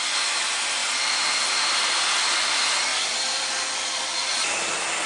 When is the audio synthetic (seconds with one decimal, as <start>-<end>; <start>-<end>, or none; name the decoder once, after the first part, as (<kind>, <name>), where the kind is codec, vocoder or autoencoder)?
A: 0.8-2.0 (vocoder, BigVGAN v2); 2.9-5.1